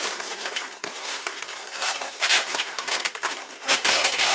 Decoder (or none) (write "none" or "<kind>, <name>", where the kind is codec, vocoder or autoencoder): codec, SNAC